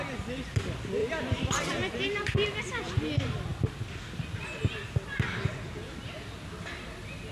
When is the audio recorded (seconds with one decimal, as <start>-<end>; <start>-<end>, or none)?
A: 0.0-1.0; 2.6-7.3